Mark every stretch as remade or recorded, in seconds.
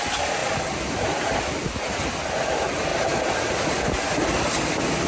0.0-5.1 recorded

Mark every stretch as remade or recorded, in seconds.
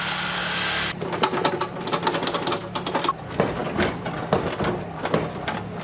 0.0-5.8 recorded